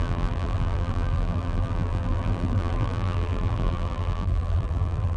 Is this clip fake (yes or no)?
yes